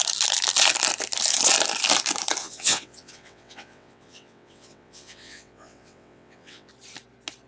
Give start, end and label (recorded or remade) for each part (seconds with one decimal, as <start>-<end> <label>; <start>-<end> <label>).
0.0-2.4 recorded; 2.4-6.7 remade; 6.7-7.5 recorded